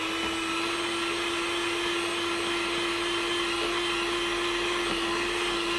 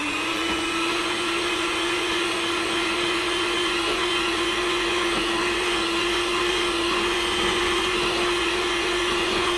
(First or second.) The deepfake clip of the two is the second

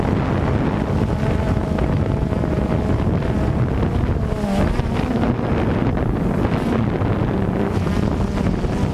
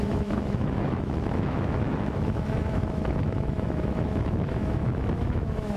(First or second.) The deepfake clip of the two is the second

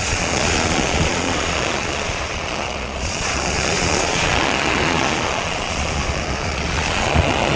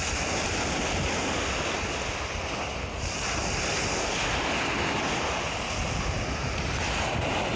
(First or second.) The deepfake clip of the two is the first